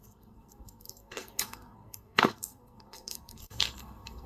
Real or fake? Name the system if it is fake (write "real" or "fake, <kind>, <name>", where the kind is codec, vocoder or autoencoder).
fake, codec, SNAC